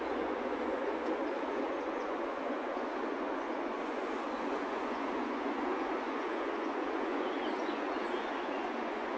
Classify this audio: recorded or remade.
remade